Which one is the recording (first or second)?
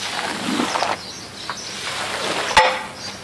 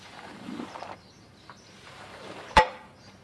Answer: first